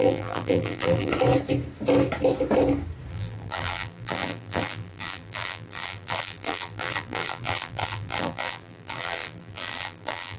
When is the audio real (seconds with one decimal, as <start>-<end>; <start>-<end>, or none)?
1.1-3.1